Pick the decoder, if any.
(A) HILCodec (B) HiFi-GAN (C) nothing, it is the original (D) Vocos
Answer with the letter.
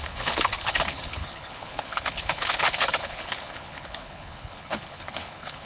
A